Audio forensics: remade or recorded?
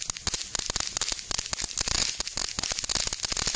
recorded